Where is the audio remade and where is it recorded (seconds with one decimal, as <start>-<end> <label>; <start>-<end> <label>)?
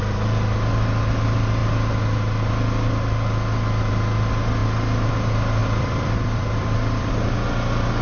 0.0-5.6 recorded; 5.6-7.1 remade; 7.1-8.0 recorded